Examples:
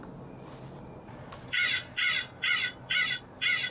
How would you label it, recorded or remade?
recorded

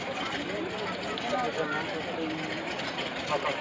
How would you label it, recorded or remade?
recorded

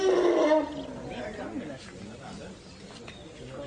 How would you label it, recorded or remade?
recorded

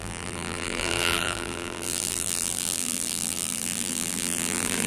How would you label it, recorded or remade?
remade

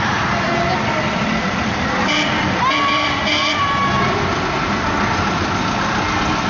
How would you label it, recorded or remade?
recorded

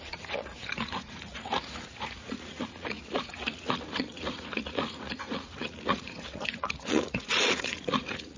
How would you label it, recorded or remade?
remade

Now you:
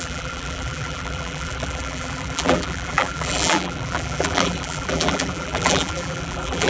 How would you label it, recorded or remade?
remade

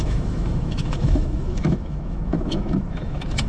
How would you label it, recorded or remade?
remade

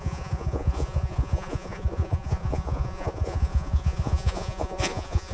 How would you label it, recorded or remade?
remade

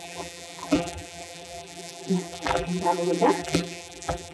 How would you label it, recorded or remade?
remade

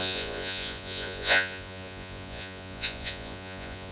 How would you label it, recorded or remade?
remade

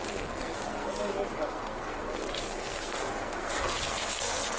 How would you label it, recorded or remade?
remade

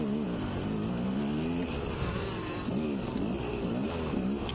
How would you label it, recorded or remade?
recorded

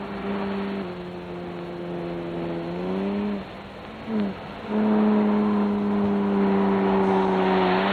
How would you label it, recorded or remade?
recorded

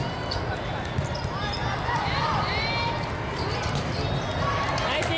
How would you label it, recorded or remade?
recorded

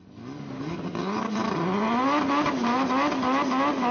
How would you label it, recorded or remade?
recorded